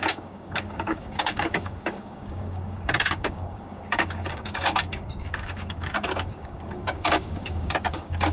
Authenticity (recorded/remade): remade